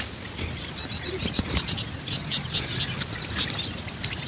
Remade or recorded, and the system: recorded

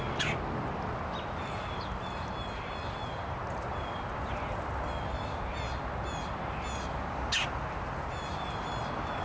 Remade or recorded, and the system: recorded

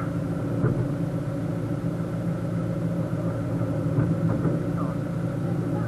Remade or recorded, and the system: recorded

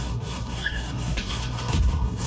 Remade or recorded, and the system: remade, codec, SNAC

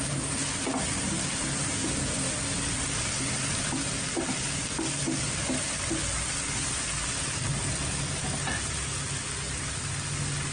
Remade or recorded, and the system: recorded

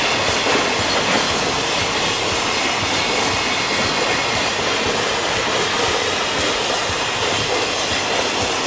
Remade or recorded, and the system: recorded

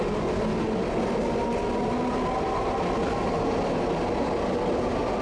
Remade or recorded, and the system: recorded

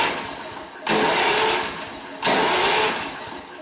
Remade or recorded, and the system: recorded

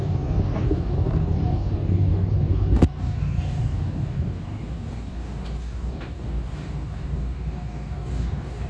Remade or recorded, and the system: remade, codec, DAC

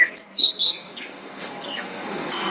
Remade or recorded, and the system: remade, codec, SNAC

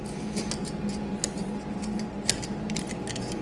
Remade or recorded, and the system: recorded